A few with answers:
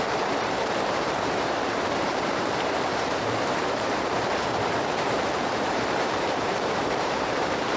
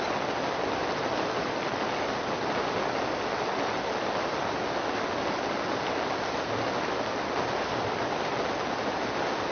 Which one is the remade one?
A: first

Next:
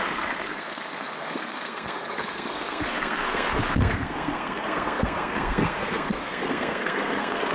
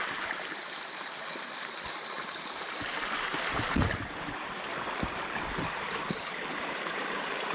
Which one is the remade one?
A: first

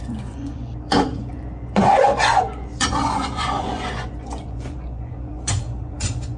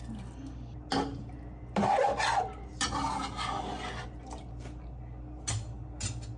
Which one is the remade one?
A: first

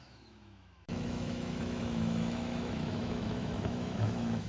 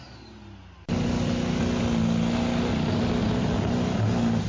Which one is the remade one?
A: first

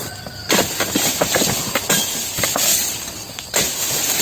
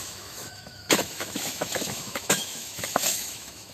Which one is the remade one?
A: second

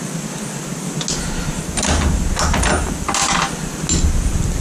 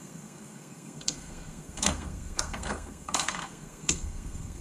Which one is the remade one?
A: second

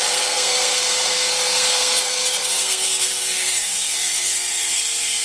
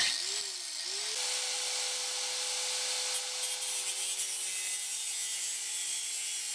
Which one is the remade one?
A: first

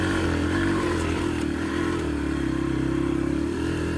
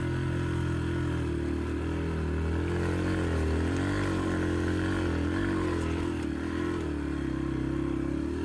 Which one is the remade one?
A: first